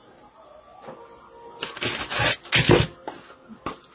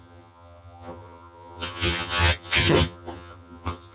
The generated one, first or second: second